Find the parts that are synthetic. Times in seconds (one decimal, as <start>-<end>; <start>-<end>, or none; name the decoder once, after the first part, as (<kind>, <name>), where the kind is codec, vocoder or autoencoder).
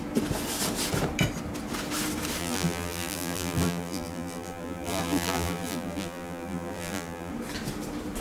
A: 2.4-7.3 (vocoder, BigVGAN v2)